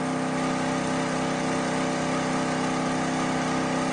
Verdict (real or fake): real